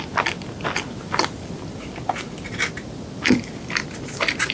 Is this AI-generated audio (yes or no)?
no